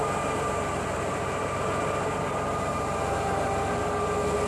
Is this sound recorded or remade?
recorded